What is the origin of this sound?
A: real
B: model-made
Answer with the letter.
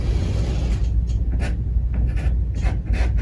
A